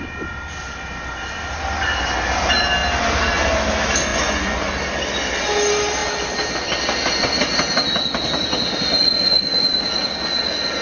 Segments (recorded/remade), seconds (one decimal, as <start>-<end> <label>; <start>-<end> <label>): 0.0-4.1 recorded; 4.1-4.7 remade; 4.7-10.8 recorded